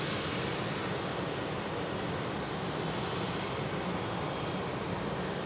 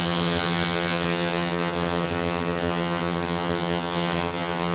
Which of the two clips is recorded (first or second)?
first